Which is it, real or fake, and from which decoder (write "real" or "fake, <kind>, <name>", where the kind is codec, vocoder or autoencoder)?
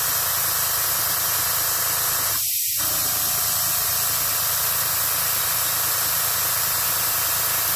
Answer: real